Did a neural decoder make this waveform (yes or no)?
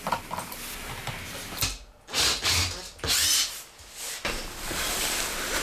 no